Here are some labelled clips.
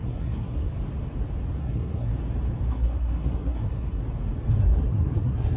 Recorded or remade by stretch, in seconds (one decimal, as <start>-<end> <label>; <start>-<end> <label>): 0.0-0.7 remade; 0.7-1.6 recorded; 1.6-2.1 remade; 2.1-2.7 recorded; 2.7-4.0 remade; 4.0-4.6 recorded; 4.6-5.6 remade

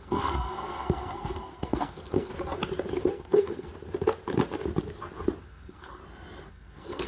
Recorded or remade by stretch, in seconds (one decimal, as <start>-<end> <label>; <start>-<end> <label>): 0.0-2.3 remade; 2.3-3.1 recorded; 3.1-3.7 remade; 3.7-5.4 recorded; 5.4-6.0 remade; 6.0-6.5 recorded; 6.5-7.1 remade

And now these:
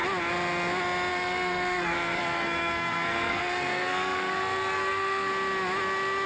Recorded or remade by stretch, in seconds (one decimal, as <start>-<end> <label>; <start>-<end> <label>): 0.0-1.1 recorded; 1.1-5.3 remade; 5.3-6.3 recorded

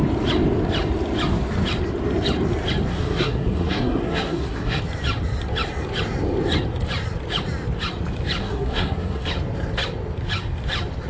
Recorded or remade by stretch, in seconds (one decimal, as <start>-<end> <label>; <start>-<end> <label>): 0.0-2.9 recorded; 2.9-4.8 remade; 4.8-8.4 recorded; 8.4-9.3 remade; 9.3-11.1 recorded

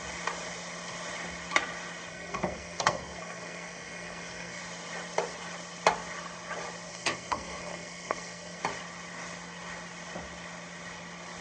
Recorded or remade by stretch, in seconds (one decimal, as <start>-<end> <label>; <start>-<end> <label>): 0.0-2.1 recorded; 2.1-4.6 remade; 4.6-6.9 recorded; 6.9-8.6 remade; 8.6-11.4 recorded